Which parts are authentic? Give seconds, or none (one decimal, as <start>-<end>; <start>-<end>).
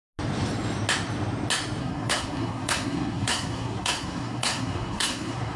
0.0-1.8